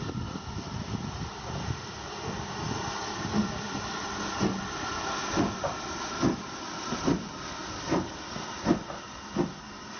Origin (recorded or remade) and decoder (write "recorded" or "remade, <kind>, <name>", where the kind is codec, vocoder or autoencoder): recorded